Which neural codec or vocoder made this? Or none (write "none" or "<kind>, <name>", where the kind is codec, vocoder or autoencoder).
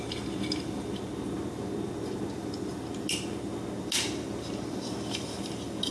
none